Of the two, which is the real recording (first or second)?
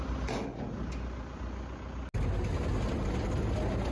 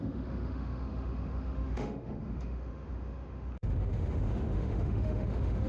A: first